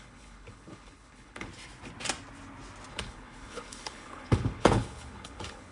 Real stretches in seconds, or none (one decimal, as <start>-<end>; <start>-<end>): 1.5-2.9